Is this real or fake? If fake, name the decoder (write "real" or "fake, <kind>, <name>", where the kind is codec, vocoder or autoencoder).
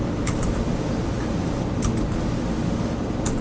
real